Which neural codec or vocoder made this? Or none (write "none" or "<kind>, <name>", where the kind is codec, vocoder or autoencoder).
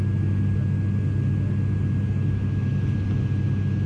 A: none